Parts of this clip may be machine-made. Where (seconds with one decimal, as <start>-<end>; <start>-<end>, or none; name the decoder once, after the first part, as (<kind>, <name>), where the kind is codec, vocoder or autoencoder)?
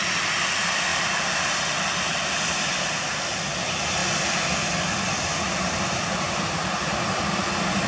0.0-7.9 (vocoder, BigVGAN v2)